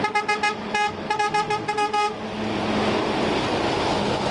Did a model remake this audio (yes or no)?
no